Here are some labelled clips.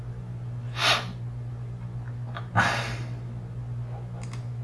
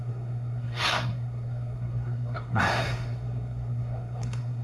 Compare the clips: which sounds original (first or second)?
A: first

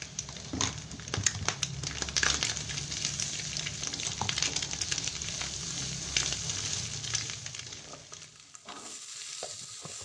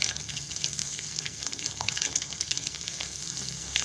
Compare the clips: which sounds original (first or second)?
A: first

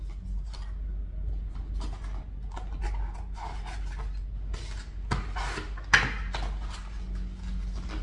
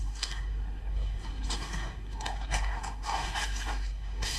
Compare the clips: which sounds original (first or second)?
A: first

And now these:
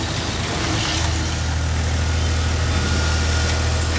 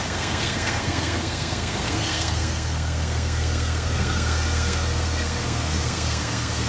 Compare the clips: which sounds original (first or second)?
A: first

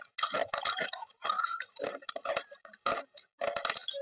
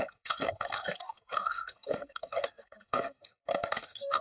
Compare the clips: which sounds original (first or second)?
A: first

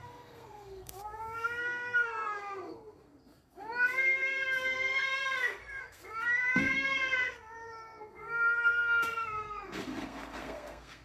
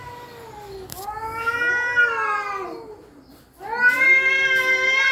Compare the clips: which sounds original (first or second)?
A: second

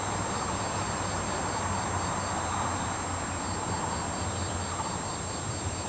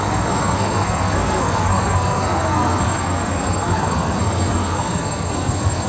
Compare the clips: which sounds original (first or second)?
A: first